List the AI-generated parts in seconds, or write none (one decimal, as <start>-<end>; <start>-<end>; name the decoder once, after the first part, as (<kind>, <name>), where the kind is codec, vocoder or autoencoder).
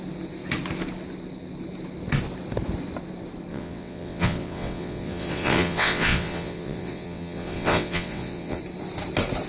3.5-8.6 (vocoder, WaveNeXt)